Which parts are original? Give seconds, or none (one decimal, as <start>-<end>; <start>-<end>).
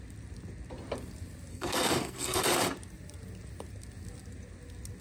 0.0-1.5; 2.4-5.0